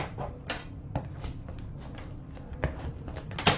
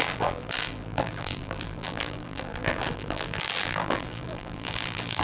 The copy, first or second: second